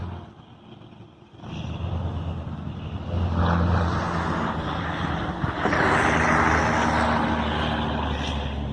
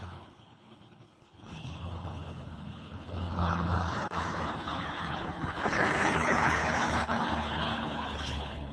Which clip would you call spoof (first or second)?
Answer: second